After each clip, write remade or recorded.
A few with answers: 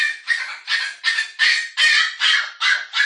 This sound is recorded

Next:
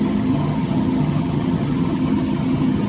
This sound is remade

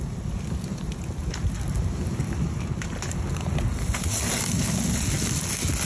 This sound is recorded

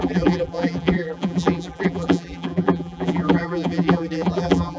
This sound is remade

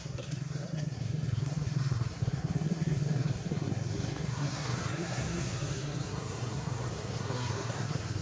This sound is remade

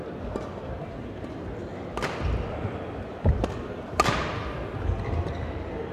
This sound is recorded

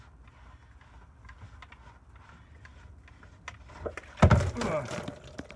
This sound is recorded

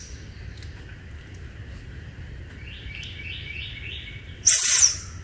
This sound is recorded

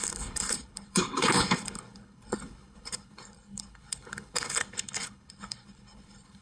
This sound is remade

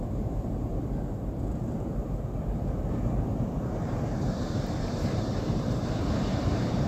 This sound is remade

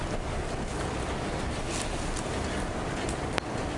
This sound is recorded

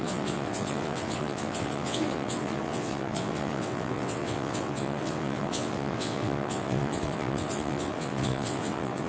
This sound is remade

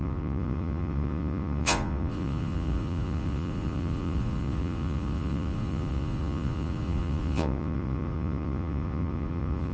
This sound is remade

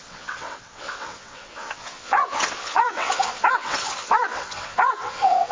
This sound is remade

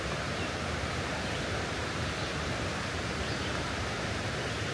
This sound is remade